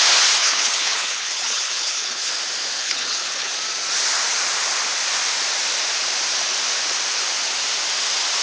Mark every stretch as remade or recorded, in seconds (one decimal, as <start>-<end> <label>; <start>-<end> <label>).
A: 0.0-0.4 recorded; 0.4-2.3 remade; 2.3-2.8 recorded; 2.8-3.5 remade; 3.5-8.4 recorded